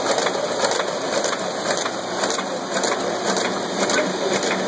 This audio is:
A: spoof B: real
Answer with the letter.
B